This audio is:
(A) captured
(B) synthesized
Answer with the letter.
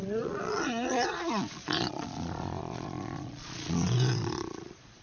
B